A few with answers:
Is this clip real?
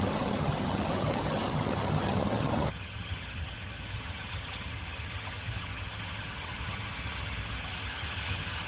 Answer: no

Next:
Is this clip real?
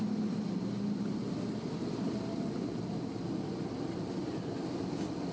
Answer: yes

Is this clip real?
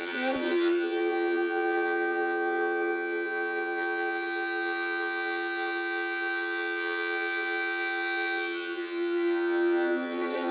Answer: no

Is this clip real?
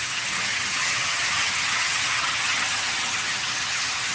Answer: no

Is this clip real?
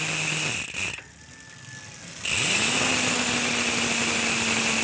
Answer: yes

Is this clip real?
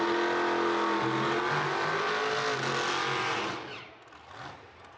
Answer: yes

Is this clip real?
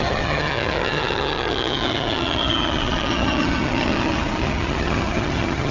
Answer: no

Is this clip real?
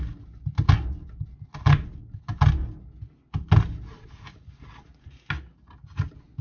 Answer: yes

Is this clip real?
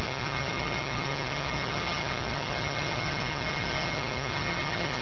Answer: no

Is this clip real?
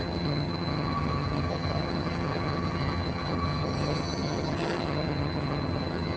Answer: no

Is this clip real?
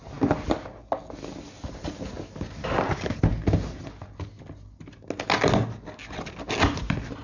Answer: yes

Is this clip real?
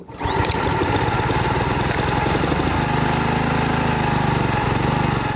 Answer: yes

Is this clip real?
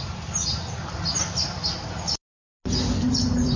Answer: yes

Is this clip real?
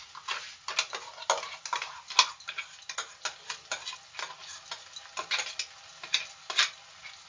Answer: yes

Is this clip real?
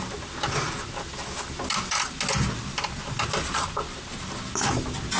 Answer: yes